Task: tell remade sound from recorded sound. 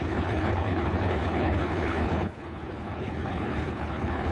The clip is remade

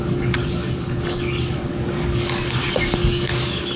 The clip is remade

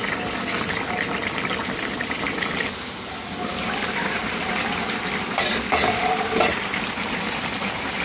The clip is recorded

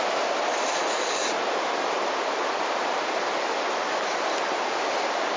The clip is recorded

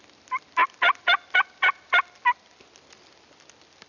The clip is recorded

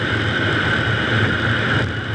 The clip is recorded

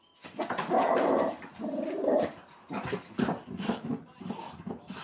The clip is remade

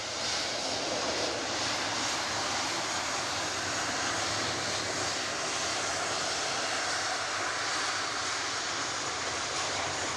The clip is recorded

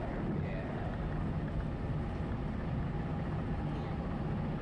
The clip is recorded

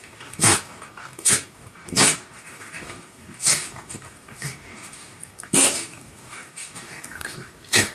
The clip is remade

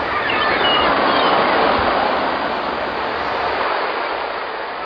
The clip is recorded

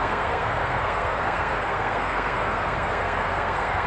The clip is remade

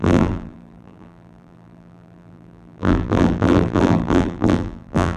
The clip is remade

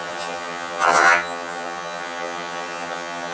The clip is remade